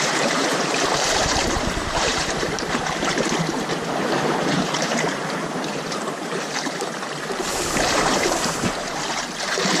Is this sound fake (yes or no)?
yes